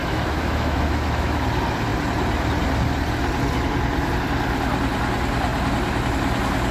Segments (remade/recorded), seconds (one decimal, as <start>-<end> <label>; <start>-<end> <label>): 0.0-1.4 remade; 1.4-6.7 recorded